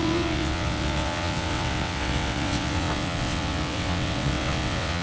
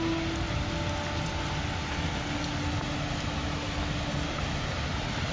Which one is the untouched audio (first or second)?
second